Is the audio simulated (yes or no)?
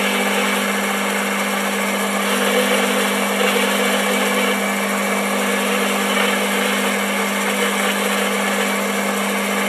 no